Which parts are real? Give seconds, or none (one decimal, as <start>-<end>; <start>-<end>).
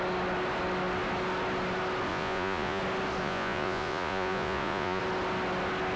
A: 0.0-2.1; 2.8-3.2; 5.0-6.0